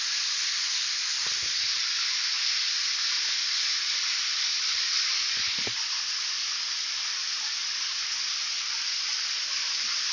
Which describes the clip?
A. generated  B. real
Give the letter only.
B